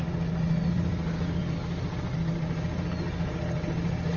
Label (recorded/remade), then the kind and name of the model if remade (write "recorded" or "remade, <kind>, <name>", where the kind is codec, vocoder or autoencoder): recorded